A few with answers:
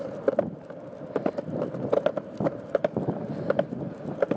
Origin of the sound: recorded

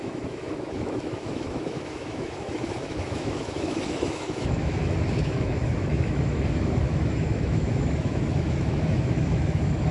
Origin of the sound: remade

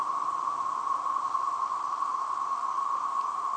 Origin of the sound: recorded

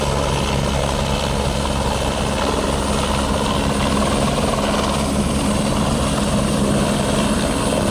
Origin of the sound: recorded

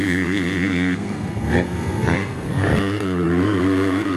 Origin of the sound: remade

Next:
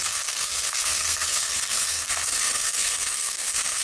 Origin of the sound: remade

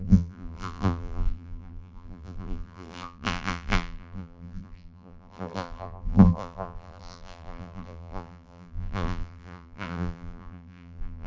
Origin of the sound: remade